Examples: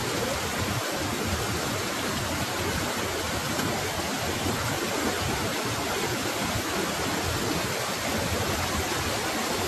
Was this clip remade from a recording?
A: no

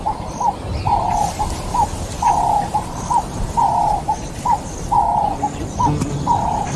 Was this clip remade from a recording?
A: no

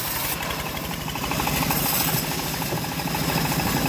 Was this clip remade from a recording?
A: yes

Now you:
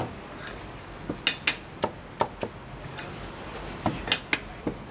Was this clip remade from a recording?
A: no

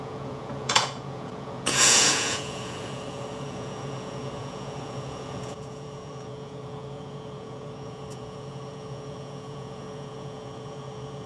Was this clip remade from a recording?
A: yes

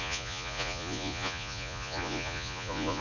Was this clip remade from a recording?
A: yes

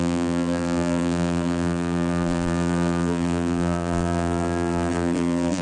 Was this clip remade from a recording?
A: yes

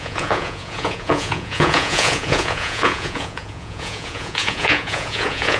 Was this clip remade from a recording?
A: yes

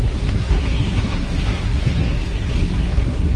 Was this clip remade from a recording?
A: yes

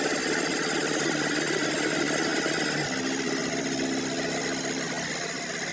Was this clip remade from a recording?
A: no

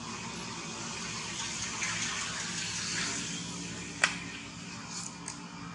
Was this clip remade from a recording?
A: no